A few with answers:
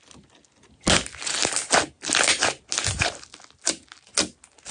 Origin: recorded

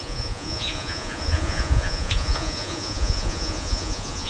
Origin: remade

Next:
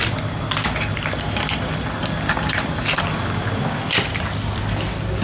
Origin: recorded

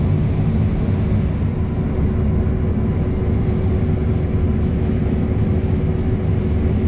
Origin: recorded